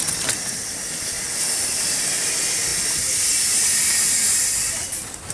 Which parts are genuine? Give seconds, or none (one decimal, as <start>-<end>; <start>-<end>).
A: 0.8-5.3